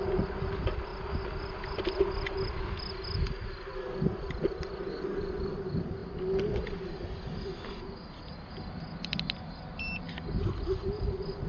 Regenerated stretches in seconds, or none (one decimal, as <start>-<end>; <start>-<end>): none